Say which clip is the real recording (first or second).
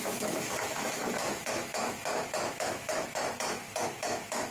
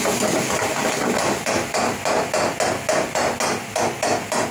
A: second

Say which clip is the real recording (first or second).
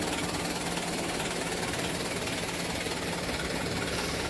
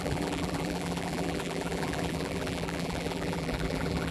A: first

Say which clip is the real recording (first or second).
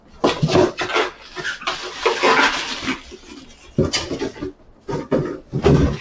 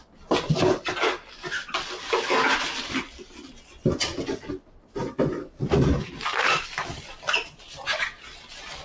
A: first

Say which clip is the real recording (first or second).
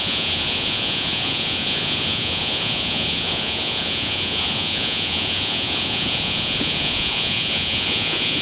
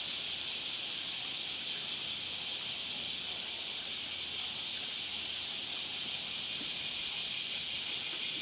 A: second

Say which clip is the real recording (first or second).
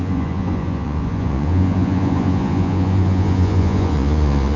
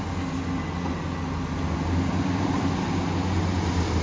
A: second